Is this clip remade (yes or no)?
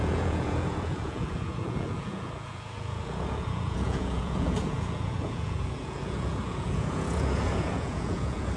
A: yes